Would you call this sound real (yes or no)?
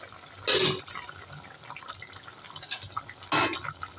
yes